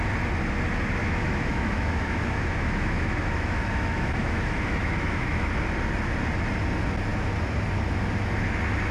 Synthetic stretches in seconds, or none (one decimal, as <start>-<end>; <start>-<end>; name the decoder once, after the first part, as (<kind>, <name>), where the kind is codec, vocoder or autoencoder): 1.0-5.5 (autoencoder, DAC-VAE)

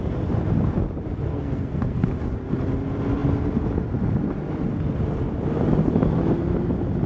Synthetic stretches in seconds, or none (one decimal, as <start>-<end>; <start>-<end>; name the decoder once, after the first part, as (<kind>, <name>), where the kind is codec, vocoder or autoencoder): 1.3-2.1 (codec, SNAC)

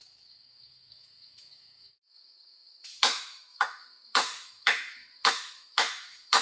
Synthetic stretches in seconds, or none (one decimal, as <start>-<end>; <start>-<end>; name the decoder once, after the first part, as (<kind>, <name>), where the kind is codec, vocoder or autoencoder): 0.0-6.4 (autoencoder, DAC-VAE)

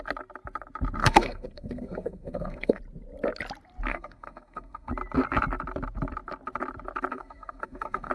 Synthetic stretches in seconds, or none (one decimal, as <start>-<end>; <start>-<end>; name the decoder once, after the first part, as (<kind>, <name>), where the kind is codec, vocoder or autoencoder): 1.0-2.8 (codec, SNAC); 3.9-4.9; 7.1-8.1

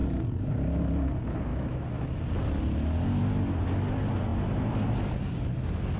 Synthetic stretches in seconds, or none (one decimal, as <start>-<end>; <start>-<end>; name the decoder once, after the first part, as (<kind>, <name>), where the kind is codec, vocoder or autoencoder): 1.5-2.2 (autoencoder, DAC-VAE)

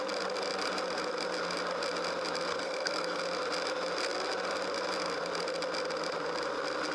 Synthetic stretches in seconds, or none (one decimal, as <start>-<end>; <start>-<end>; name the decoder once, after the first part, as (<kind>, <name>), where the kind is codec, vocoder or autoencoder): 2.5-3.2 (codec, SNAC)

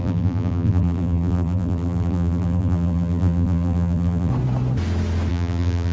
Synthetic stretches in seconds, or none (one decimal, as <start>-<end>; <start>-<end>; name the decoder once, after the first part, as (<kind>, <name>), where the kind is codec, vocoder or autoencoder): 0.0-4.3 (vocoder, BigVGAN v2); 5.3-5.9

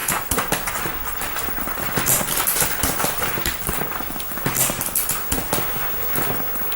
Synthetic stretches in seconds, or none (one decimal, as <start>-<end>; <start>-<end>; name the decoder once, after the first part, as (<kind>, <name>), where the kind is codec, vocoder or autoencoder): 0.0-4.1 (vocoder, BigVGAN v2)